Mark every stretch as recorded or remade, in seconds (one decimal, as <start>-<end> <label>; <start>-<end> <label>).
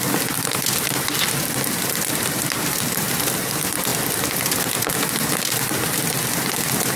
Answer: 0.0-7.0 recorded